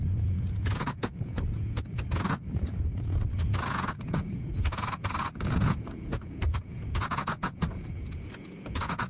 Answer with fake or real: fake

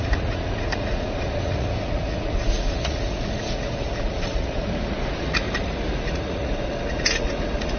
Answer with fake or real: fake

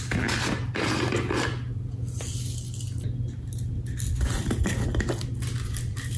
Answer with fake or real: real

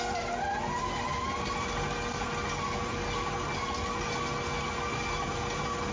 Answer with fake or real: real